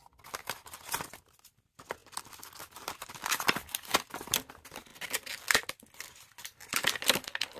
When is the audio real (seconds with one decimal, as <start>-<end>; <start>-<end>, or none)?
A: 0.0-7.6